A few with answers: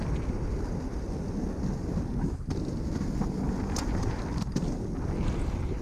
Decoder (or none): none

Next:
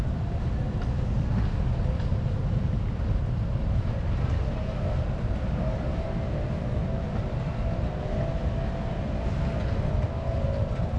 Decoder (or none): none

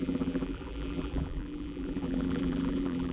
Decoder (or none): vocoder, BigVGAN v2